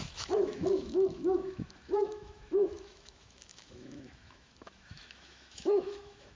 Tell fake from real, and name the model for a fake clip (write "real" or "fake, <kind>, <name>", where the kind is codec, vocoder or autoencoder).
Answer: fake, autoencoder, DAC-VAE